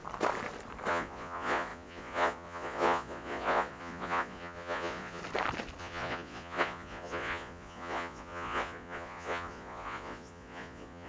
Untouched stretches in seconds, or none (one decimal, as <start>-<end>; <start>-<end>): 0.0-0.9; 5.2-5.8